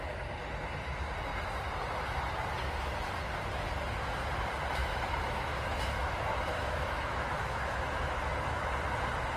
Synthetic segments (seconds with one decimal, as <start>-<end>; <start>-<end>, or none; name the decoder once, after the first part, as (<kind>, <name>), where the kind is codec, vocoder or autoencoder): 4.8-8.7 (autoencoder, DAC-VAE)